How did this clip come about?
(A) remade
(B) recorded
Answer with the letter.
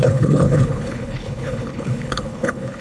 A